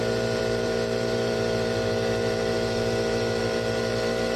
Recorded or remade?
remade